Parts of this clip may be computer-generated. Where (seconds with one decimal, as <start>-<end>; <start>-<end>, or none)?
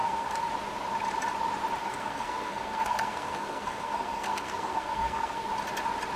0.0-0.5; 1.8-5.5